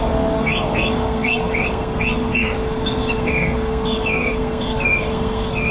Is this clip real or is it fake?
fake